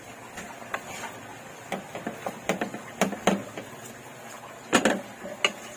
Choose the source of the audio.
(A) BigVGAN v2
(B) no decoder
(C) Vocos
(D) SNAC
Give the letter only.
B